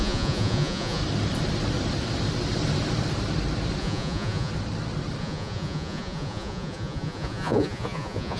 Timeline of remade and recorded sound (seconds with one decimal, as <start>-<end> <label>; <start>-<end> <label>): 0.0-1.0 remade; 1.0-3.8 recorded; 3.8-4.5 remade; 4.5-5.2 recorded; 5.2-8.4 remade